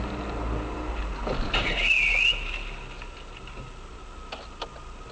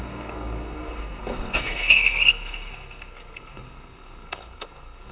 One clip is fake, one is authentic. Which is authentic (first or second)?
first